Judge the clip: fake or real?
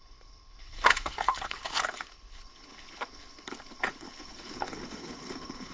fake